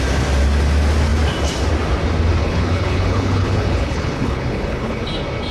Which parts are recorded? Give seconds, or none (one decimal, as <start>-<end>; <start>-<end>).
0.0-2.4; 5.1-5.5